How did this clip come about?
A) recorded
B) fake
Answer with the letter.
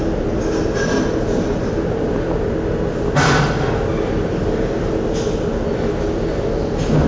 A